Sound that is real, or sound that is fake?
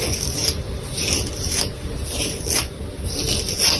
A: fake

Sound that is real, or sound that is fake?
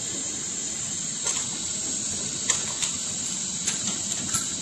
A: real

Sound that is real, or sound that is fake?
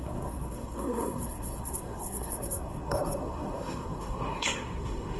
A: fake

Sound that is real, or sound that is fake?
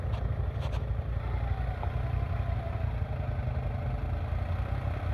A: real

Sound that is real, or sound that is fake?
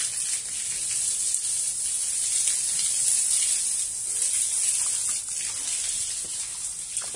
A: real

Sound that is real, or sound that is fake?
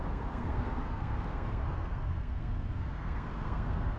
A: fake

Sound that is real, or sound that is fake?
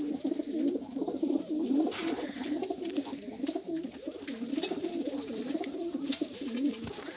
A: fake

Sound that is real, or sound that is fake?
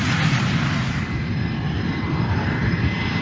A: real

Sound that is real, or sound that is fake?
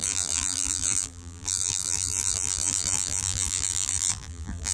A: fake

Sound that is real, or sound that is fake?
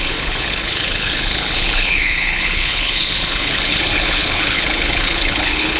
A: fake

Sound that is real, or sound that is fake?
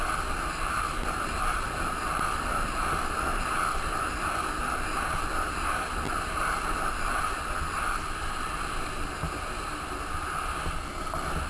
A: real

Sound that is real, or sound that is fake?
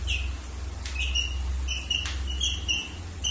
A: real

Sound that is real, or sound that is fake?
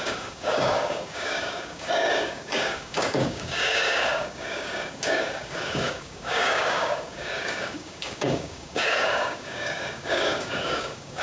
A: fake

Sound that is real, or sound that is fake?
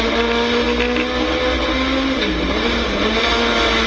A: real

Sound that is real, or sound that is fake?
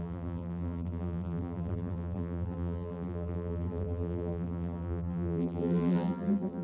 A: fake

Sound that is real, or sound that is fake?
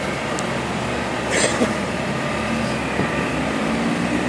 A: real